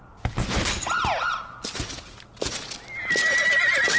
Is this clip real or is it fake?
real